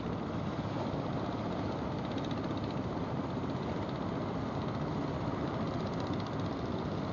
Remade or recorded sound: recorded